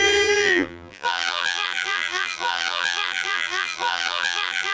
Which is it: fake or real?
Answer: fake